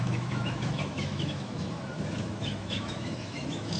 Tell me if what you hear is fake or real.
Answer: fake